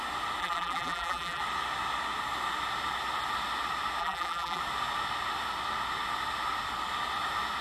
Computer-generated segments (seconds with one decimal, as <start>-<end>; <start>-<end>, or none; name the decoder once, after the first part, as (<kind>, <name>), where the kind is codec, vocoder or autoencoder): 0.4-1.4 (vocoder, BigVGAN v2); 4.0-4.6